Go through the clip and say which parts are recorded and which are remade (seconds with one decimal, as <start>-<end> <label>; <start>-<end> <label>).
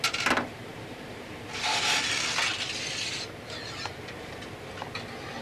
0.0-5.4 recorded